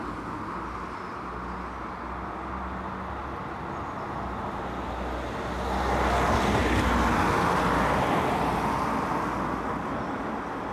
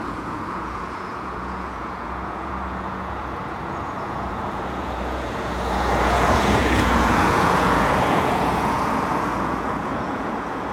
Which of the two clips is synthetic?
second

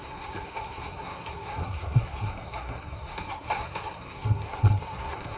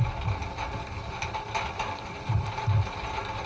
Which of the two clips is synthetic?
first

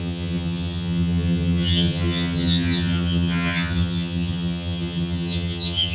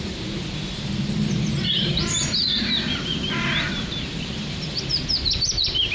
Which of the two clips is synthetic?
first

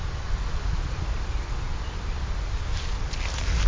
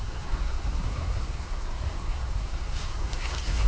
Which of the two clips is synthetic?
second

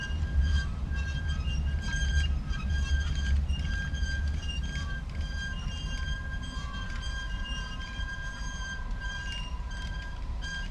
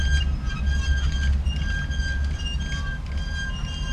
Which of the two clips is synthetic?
first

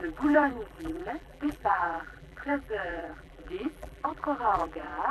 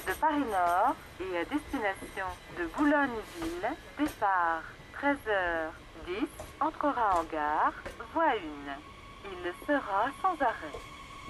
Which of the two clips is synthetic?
first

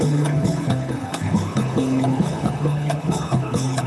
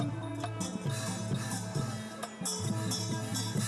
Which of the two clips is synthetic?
first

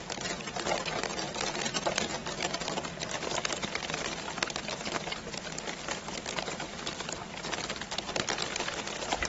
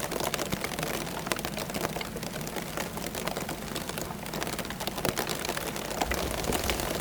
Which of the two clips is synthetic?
first